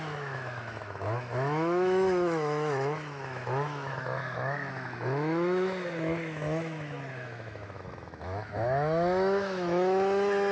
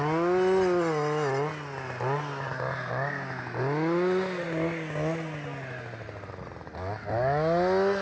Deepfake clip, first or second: first